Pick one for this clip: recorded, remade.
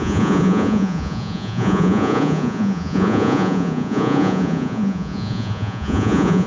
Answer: remade